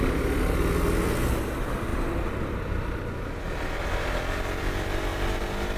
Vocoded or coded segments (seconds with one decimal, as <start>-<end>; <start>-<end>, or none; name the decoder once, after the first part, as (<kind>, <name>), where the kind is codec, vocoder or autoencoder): none